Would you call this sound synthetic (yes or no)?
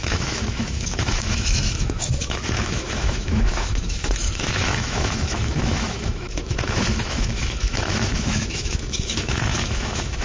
yes